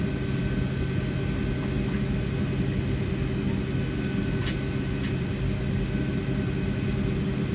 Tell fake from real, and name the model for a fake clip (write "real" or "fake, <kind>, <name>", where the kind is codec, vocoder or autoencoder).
real